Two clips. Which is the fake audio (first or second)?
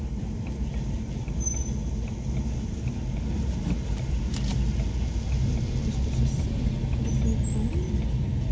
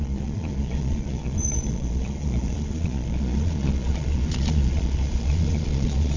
second